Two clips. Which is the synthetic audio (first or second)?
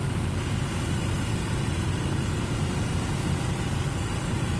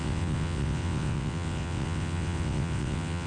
second